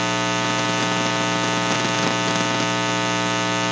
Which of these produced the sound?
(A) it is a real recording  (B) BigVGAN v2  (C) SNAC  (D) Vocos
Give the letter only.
A